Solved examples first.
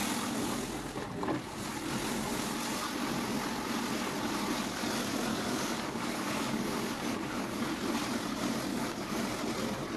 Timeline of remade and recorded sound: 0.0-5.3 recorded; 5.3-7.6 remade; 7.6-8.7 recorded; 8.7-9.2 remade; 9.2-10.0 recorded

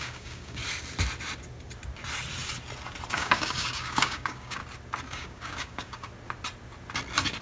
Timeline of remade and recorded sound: 0.0-0.6 remade; 0.6-3.1 recorded; 3.1-4.6 remade; 4.6-5.1 recorded; 5.1-6.1 remade; 6.1-7.4 recorded

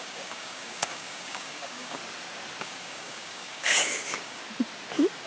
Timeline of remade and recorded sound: 0.0-2.0 remade; 2.0-2.6 recorded; 2.6-4.4 remade; 4.4-5.3 recorded

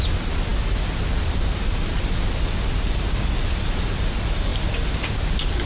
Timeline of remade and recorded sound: 0.0-5.7 recorded

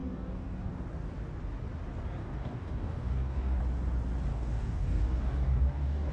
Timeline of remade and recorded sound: 0.0-0.7 remade; 0.7-2.2 recorded; 2.2-3.6 remade; 3.6-4.3 recorded; 4.3-6.1 remade

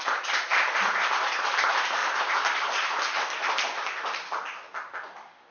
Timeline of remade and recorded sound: 0.0-5.5 recorded

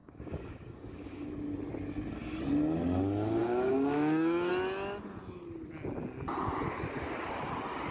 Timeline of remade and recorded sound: 0.0-1.3 remade; 1.3-3.4 recorded; 3.4-4.5 remade; 4.5-7.9 recorded

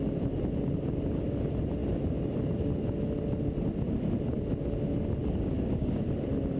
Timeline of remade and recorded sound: 0.0-5.2 recorded; 5.2-6.1 remade; 6.1-6.6 recorded